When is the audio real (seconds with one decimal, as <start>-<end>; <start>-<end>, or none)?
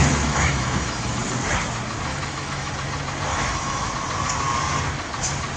1.2-2.1; 2.7-3.3; 3.9-5.6